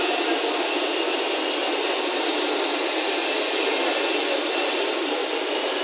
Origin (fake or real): real